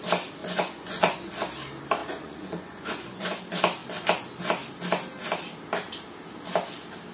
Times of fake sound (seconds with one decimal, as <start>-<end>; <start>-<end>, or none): 0.4-1.3; 2.0-3.4